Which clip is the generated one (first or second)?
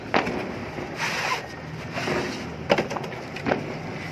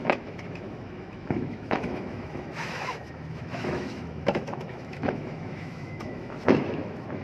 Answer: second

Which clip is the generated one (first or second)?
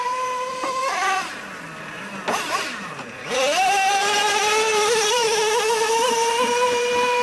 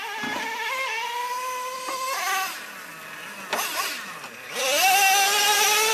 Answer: first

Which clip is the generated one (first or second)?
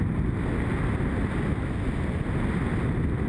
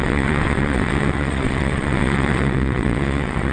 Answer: second